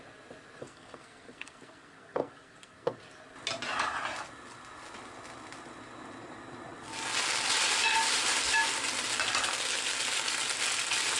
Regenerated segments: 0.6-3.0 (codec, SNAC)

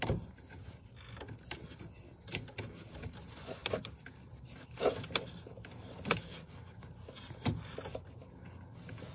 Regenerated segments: none